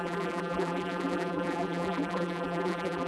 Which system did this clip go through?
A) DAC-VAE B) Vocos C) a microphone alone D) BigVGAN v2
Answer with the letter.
D